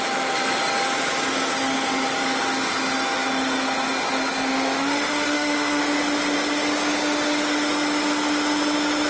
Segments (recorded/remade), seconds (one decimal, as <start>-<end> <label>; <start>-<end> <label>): 0.0-4.5 recorded; 4.5-5.8 remade; 5.8-9.1 recorded